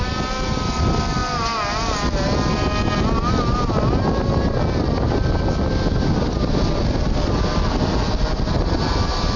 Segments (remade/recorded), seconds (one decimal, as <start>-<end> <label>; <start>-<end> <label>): 0.0-9.4 recorded